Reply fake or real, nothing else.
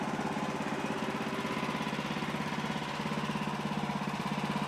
real